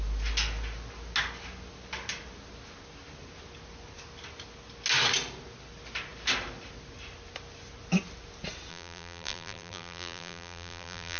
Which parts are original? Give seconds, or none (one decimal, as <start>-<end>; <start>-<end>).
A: 0.0-8.7